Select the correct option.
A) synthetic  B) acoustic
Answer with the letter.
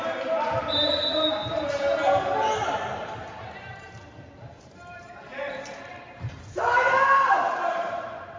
A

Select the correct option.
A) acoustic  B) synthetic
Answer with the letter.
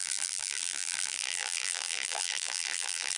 B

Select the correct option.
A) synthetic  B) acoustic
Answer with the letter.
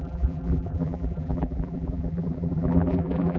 A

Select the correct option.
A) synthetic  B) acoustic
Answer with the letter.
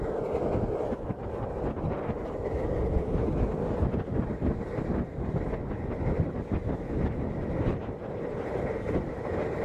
B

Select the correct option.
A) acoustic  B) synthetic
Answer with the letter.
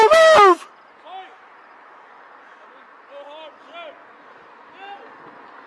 A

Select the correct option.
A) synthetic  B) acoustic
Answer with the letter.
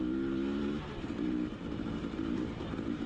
B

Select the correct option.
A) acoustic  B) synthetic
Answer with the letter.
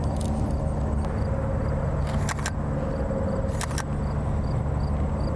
A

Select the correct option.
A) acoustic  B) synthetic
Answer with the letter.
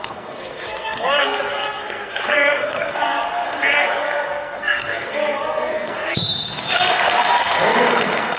B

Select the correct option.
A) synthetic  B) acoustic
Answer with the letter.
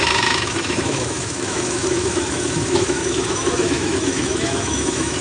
A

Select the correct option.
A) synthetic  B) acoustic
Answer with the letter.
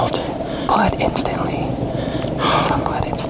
A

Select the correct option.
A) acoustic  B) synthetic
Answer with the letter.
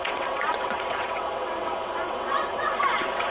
B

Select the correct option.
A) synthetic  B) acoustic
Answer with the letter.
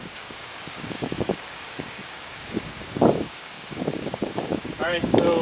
A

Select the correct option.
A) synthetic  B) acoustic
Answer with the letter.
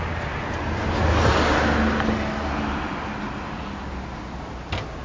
B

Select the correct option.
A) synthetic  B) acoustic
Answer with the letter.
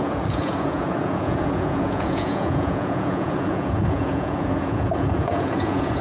A